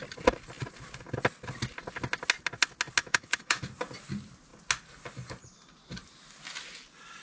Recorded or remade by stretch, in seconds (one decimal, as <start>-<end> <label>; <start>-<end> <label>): 0.0-3.0 recorded; 3.0-3.6 remade; 3.6-7.2 recorded